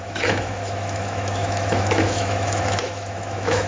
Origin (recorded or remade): remade